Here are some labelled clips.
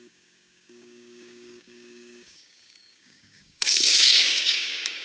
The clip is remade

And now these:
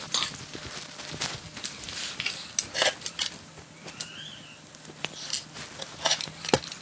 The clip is recorded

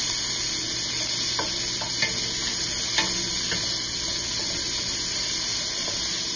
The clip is recorded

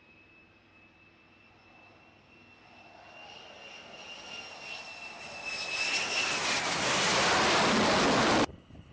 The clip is recorded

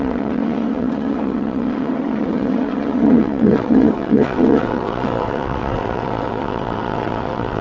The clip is remade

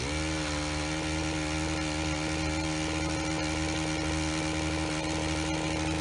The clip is recorded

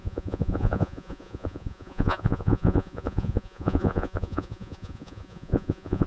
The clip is remade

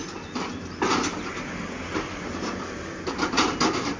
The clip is recorded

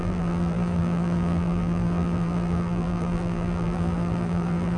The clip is remade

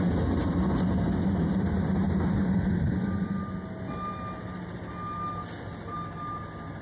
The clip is recorded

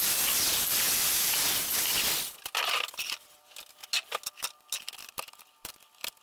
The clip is recorded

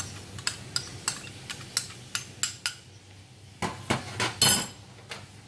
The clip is recorded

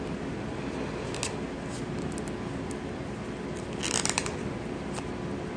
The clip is recorded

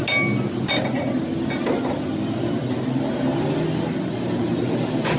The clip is recorded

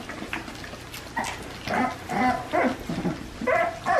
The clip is recorded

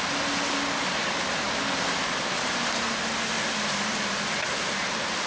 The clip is recorded